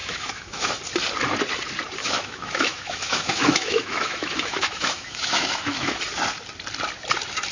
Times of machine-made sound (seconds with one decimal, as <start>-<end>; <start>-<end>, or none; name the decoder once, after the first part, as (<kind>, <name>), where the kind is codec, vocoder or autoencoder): 0.0-0.7 (autoencoder, DAC-VAE); 2.0-6.0